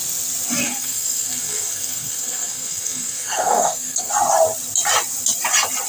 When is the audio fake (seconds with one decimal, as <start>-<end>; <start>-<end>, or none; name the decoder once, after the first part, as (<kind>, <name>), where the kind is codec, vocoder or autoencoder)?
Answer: 0.6-4.1 (codec, SNAC)